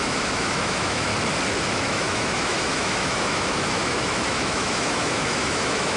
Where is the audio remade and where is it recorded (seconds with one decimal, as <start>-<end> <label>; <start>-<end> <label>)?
0.0-1.1 remade; 1.1-1.7 recorded; 1.7-6.0 remade